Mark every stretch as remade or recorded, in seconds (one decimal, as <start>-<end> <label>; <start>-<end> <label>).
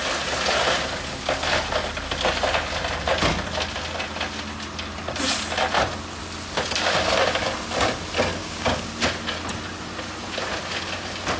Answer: 0.0-8.4 recorded; 8.4-8.9 remade; 8.9-11.4 recorded